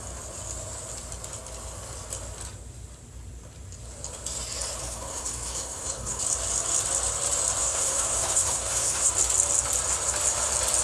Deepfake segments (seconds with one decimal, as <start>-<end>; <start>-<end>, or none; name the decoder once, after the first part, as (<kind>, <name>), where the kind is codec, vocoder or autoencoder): 4.8-6.2 (codec, SNAC); 7.6-9.1